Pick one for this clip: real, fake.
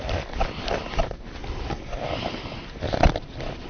real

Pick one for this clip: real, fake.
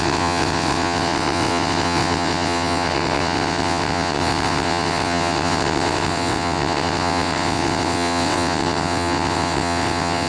fake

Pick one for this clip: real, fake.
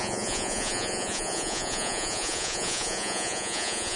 fake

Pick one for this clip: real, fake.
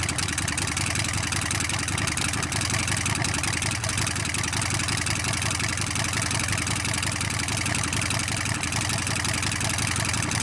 real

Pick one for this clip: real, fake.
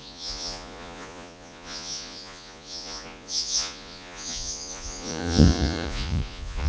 fake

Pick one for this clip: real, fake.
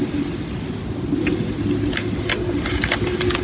real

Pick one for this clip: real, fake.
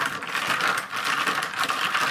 real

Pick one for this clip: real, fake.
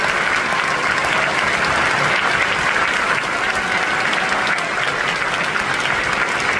real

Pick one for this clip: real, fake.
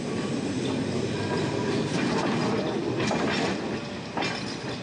real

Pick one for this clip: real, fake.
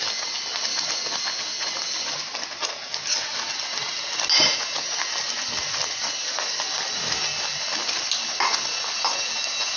real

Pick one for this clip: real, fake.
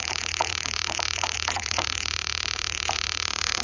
fake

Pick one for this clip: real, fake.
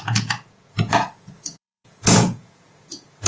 fake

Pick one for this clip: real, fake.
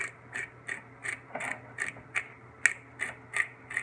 real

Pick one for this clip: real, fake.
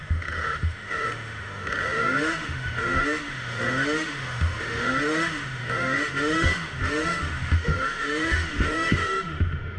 fake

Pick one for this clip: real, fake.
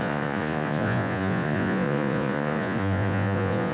fake